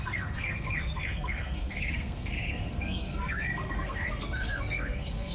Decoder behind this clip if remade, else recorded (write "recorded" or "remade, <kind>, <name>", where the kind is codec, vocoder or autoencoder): remade, codec, SNAC